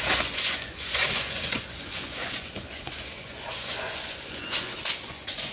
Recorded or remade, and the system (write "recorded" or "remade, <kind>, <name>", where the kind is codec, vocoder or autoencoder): remade, vocoder, Vocos